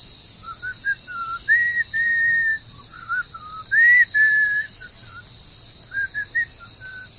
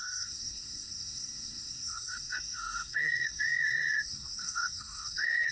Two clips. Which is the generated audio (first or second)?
second